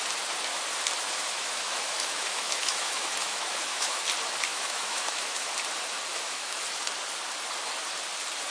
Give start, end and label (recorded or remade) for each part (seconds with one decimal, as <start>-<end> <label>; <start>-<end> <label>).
0.0-1.0 recorded; 1.0-4.0 remade; 4.0-4.5 recorded; 4.5-5.5 remade; 5.5-6.1 recorded; 6.1-6.6 remade; 6.6-8.5 recorded